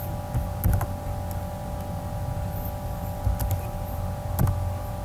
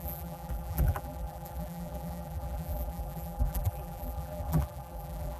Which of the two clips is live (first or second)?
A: first